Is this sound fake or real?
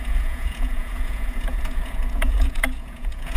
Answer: fake